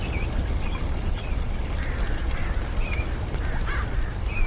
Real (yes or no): yes